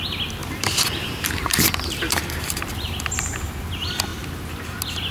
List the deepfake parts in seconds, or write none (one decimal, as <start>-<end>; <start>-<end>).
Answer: 0.4-3.5